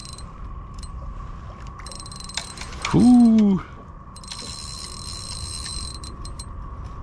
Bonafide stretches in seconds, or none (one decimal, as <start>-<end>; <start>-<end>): 0.0-7.0